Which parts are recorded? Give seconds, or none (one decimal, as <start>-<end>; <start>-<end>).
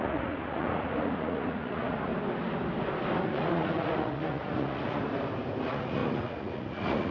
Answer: 2.1-3.2; 5.1-5.6